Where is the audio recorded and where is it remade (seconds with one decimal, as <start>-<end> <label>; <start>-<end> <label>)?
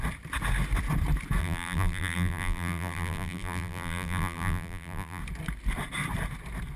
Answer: 0.0-1.4 recorded; 1.4-5.2 remade; 5.2-6.8 recorded